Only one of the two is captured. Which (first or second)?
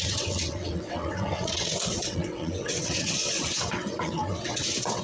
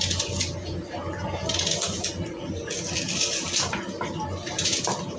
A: second